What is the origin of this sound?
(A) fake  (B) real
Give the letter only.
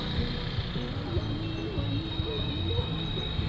B